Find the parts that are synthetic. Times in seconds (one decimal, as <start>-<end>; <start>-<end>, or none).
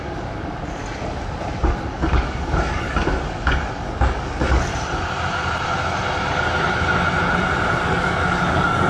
0.0-0.8; 1.9-4.7; 7.8-8.9